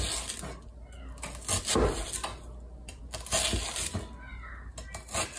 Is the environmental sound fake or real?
real